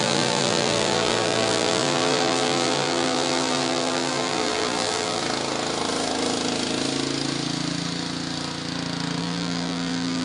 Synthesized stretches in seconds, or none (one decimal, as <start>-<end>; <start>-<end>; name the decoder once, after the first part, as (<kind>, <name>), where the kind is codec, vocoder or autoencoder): 0.0-5.2 (vocoder, BigVGAN v2); 9.2-10.2

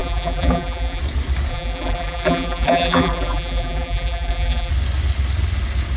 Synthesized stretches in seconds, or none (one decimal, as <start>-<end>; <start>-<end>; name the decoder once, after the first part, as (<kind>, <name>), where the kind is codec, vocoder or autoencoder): 0.0-1.0 (vocoder, BigVGAN v2); 1.5-4.7

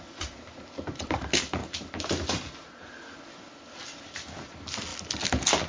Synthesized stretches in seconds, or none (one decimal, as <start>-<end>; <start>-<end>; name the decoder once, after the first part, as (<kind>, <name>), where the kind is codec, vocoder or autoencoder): none

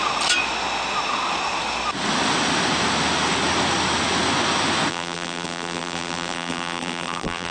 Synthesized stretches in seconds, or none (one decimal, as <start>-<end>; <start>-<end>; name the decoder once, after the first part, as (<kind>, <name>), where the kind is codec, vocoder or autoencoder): 4.9-7.5 (vocoder, BigVGAN v2)

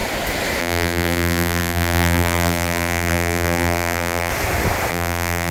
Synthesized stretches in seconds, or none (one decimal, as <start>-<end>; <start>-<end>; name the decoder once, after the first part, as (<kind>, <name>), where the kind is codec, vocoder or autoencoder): 0.6-4.3 (vocoder, BigVGAN v2); 4.9-5.5

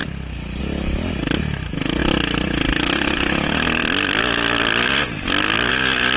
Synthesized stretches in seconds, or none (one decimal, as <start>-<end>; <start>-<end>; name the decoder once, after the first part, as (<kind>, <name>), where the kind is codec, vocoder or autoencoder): 2.0-5.7 (vocoder, BigVGAN v2)

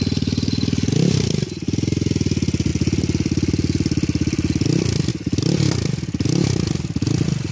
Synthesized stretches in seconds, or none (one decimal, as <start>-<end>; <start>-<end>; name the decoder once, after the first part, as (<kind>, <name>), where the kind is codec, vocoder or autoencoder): 2.7-5.1 (vocoder, BigVGAN v2)

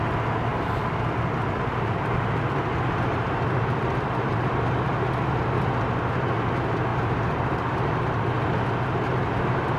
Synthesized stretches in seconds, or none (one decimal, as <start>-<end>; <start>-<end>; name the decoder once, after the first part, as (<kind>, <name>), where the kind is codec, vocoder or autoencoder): 0.5-4.9 (vocoder, BigVGAN v2); 6.9-8.6